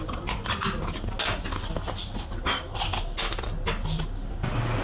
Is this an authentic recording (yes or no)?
yes